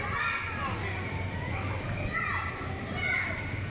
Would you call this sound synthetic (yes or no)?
no